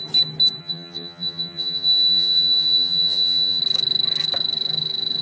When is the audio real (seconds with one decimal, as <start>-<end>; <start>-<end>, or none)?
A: 0.0-0.6; 3.6-5.2